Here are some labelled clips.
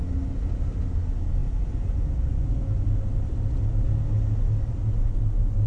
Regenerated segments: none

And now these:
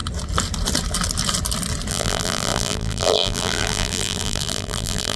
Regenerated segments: 1.9-5.2 (vocoder, BigVGAN v2)

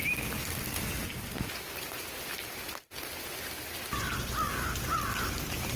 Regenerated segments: 2.6-5.8 (vocoder, BigVGAN v2)

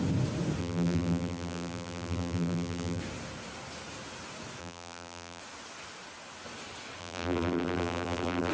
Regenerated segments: 0.6-3.0 (vocoder, BigVGAN v2); 4.6-5.4; 7.0-8.5

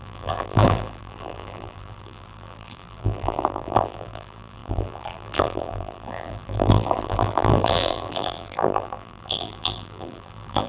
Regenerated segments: 0.0-10.7 (vocoder, BigVGAN v2)

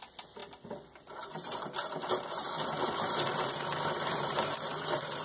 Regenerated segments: 0.0-0.4 (vocoder, BigVGAN v2); 3.5-5.2